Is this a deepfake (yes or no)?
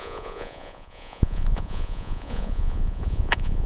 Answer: yes